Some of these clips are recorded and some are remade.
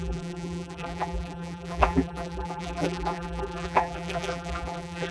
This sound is remade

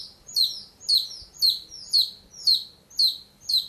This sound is recorded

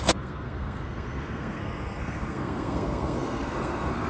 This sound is remade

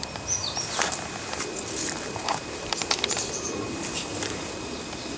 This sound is remade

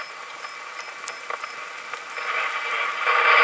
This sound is recorded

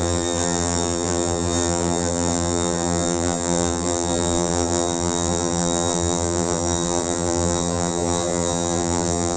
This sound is remade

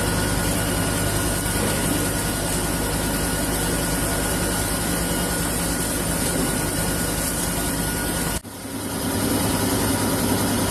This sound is recorded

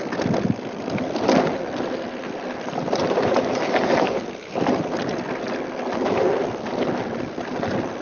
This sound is remade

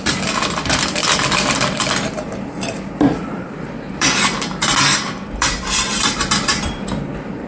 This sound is remade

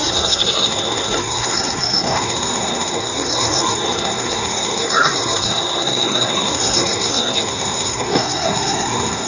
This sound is remade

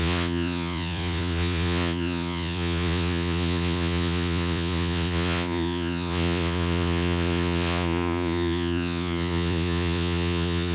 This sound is remade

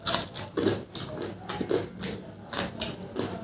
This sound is recorded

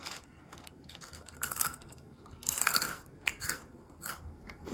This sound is remade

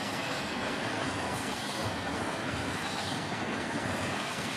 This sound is remade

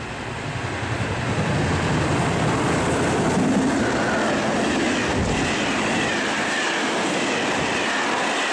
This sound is recorded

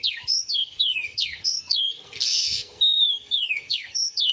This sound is remade